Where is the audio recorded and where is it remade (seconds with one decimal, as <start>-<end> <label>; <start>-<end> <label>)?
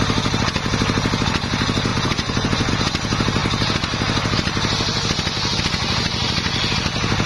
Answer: 0.0-1.9 recorded; 1.9-2.7 remade; 2.7-7.3 recorded